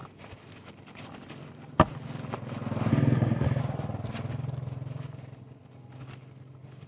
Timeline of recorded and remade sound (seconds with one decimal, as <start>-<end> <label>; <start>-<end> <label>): 0.0-2.9 recorded; 2.9-3.6 remade; 3.6-6.9 recorded